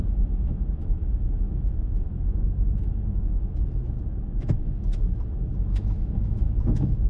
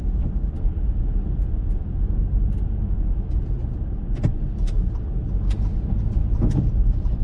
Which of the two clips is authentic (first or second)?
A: second